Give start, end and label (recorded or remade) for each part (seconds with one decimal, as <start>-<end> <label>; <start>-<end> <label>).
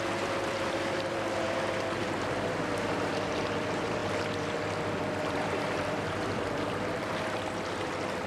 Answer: 0.0-4.0 remade; 4.0-5.3 recorded; 5.3-8.3 remade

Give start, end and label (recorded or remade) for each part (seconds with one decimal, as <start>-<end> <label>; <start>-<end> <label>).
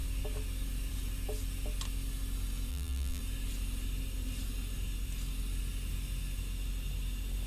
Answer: 0.0-2.7 recorded; 2.7-3.2 remade; 3.2-7.5 recorded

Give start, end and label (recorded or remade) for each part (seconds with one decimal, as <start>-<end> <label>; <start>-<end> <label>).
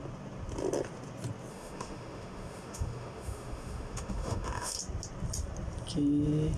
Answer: 0.0-1.5 recorded; 1.5-4.8 remade; 4.8-6.6 recorded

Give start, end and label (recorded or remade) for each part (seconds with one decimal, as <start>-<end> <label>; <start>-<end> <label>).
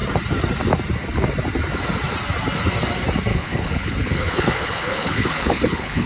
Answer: 0.0-3.3 recorded; 3.3-6.1 remade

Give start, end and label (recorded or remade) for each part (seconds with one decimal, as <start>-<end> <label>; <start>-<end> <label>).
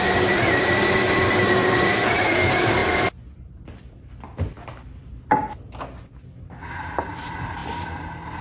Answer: 0.0-5.4 remade; 5.4-7.0 recorded; 7.0-8.4 remade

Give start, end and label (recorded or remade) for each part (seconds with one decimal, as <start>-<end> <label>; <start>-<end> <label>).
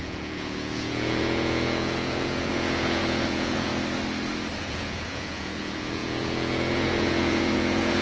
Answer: 0.0-3.7 remade; 3.7-4.6 recorded; 4.6-8.0 remade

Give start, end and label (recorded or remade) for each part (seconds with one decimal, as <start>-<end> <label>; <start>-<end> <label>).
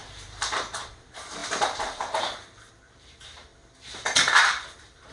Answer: 0.0-3.5 remade; 3.5-4.3 recorded; 4.3-5.1 remade